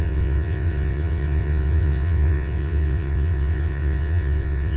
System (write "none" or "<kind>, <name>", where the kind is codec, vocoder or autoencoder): vocoder, WaveNeXt